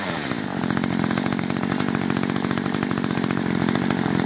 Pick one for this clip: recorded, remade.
remade